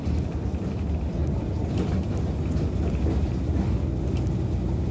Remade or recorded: recorded